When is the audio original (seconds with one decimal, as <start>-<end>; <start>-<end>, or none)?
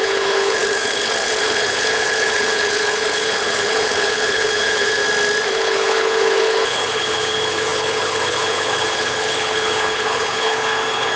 5.0-5.5